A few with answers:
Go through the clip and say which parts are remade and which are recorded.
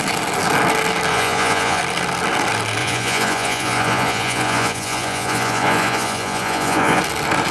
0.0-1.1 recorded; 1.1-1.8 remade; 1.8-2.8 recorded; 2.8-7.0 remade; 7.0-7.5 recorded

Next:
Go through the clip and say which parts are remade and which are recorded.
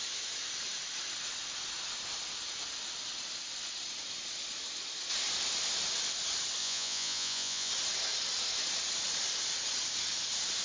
0.0-6.6 recorded; 6.6-7.7 remade; 7.7-10.6 recorded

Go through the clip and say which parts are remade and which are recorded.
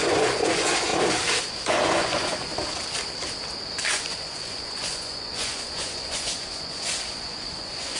0.0-0.9 remade; 0.9-1.5 recorded; 1.5-2.5 remade; 2.5-3.9 recorded; 3.9-8.0 remade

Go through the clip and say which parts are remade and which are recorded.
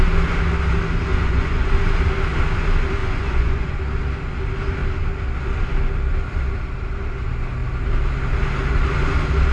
0.0-1.1 recorded; 1.1-1.7 remade; 1.7-3.0 recorded; 3.0-3.8 remade; 3.8-9.5 recorded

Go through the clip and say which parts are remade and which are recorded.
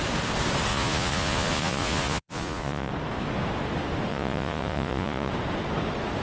0.0-0.7 recorded; 0.7-2.9 remade; 2.9-4.1 recorded; 4.1-5.3 remade; 5.3-6.2 recorded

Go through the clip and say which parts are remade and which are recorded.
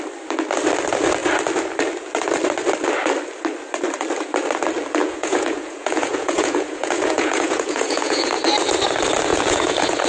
0.0-5.0 recorded; 5.0-8.3 remade; 8.3-9.3 recorded; 9.3-10.1 remade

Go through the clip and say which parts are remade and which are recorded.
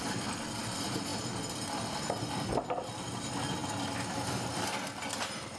0.0-5.6 recorded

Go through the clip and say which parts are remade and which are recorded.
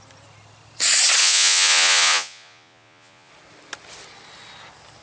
0.0-1.2 recorded; 1.2-3.3 remade; 3.3-5.0 recorded